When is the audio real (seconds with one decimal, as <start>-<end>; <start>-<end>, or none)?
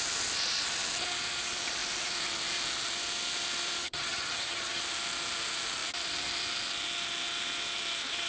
0.0-3.8; 4.8-8.3